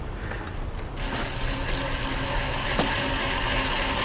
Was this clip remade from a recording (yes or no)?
no